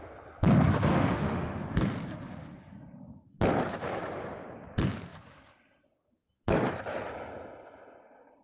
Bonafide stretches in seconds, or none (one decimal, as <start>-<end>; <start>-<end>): 0.0-0.9; 1.6-8.4